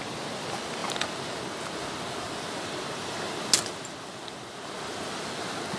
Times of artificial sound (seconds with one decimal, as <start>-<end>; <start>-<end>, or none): none